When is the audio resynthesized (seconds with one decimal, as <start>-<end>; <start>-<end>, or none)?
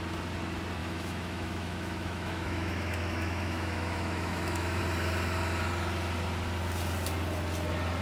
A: 0.8-4.8